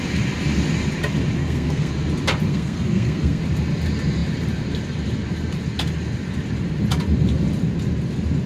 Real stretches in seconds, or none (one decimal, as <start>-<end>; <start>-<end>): 0.0-1.4; 1.9-2.5; 3.4-8.5